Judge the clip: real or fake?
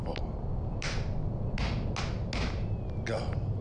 real